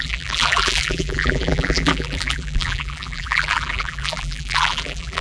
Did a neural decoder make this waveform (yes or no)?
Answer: yes